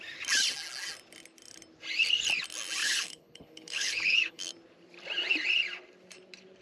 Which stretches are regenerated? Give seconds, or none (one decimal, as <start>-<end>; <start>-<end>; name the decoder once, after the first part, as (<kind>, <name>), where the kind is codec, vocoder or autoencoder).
2.8-4.4 (codec, HILCodec)